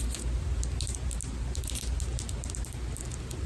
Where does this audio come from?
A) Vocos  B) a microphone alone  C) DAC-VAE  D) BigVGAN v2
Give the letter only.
B